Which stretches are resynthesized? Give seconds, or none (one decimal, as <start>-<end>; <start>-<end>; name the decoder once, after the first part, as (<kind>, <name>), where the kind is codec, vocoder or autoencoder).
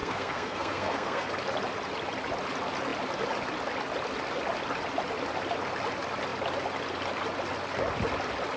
0.0-1.3 (codec, SNAC)